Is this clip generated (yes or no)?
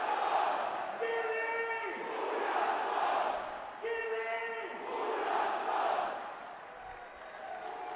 no